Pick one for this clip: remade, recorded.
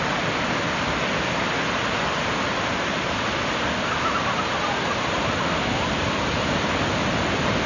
recorded